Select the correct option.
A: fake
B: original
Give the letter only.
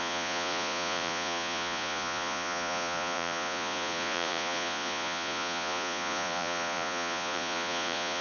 A